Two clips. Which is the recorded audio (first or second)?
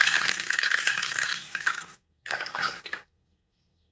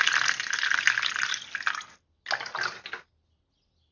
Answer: second